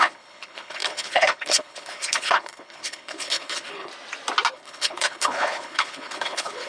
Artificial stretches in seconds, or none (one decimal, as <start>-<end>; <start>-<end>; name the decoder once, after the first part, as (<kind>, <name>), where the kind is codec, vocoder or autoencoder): 0.0-3.9 (codec, HILCodec); 4.5-6.7